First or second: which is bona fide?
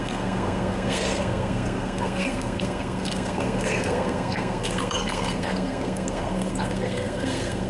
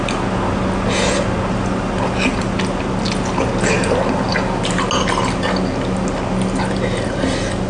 second